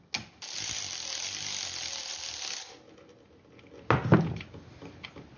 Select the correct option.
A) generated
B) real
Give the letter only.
B